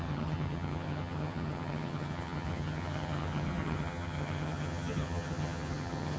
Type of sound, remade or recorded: remade